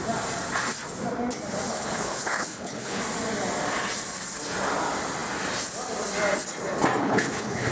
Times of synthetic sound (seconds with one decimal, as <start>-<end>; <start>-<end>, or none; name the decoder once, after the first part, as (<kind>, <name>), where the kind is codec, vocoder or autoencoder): 1.7-3.0 (codec, HILCodec); 7.0-7.7